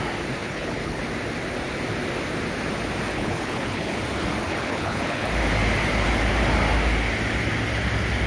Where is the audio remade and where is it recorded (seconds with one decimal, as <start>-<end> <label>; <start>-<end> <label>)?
0.0-0.4 recorded; 0.4-1.0 remade; 1.0-3.1 recorded; 3.1-4.0 remade; 4.0-4.5 recorded; 4.5-5.3 remade; 5.3-8.3 recorded